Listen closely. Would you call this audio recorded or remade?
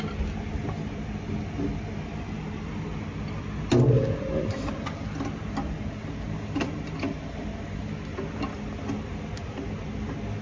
recorded